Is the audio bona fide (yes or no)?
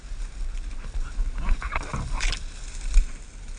yes